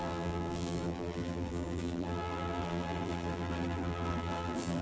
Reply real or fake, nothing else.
fake